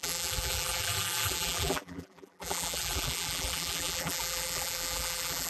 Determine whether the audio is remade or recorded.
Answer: remade